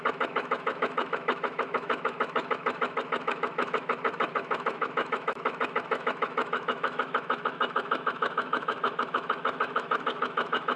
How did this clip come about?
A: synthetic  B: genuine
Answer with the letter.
A